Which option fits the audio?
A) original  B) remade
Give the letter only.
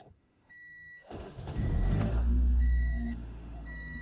B